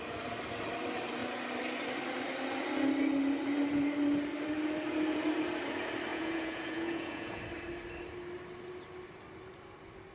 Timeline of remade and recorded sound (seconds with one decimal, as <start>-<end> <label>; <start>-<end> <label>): 0.0-6.1 recorded; 6.1-7.4 remade; 7.4-10.1 recorded

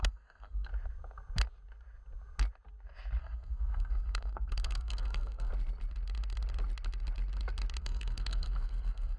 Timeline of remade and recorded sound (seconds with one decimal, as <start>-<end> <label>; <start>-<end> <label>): 0.0-0.7 remade; 0.7-3.2 recorded; 3.2-5.5 remade; 5.5-7.8 recorded; 7.8-9.2 remade

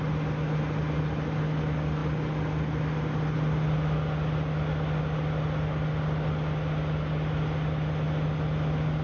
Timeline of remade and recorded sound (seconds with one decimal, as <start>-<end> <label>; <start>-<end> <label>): 0.0-9.0 recorded

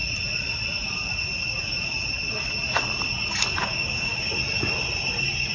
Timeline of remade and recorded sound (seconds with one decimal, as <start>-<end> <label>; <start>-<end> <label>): 0.0-3.6 recorded; 3.6-4.3 remade; 4.3-5.5 recorded

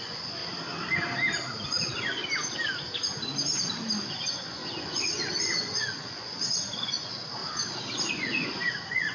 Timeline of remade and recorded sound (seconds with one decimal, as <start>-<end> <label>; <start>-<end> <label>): 0.0-0.4 remade; 0.4-1.8 recorded; 1.8-2.2 remade; 2.2-4.0 recorded; 4.0-7.4 remade; 7.4-8.1 recorded; 8.1-9.1 remade

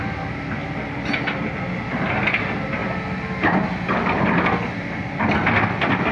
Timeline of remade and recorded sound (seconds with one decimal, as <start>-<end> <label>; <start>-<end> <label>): 0.0-6.1 recorded

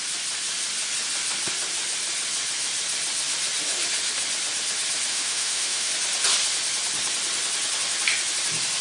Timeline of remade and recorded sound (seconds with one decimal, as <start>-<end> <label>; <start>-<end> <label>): 0.0-5.1 recorded; 5.1-5.9 remade; 5.9-8.8 recorded

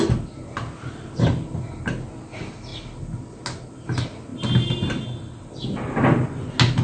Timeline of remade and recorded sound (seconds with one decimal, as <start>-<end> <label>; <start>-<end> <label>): 0.0-6.8 recorded